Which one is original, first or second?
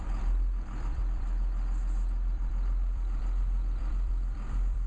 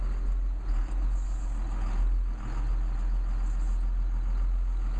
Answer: second